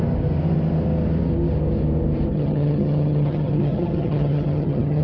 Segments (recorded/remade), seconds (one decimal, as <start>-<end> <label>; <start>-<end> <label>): 0.0-2.3 recorded; 2.3-5.0 remade